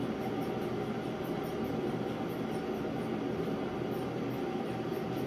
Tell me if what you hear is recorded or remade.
recorded